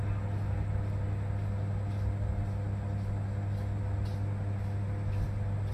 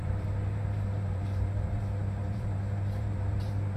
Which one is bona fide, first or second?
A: first